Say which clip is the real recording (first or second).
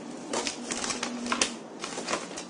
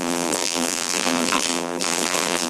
first